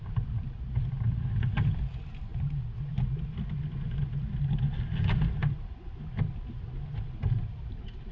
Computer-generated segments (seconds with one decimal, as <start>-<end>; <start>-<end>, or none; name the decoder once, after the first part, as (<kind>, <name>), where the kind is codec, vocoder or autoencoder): none